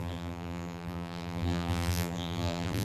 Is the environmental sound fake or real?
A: fake